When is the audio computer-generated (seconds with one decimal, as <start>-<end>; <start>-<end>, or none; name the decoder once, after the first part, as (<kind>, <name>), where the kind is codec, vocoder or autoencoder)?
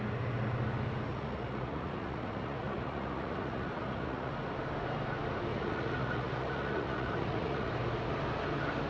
1.1-4.3 (vocoder, Vocos); 5.5-7.7